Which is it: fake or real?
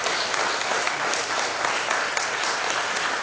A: real